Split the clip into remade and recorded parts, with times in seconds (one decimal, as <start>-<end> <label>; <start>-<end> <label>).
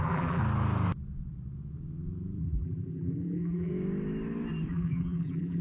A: 0.0-0.4 remade; 0.4-2.4 recorded; 2.4-3.7 remade; 3.7-4.7 recorded; 4.7-5.6 remade